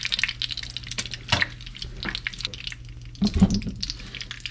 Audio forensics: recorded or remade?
recorded